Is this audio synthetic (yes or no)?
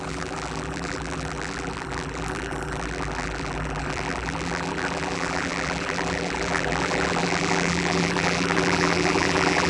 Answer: yes